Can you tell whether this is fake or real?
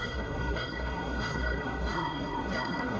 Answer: fake